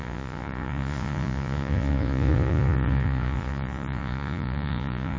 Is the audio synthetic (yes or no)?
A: yes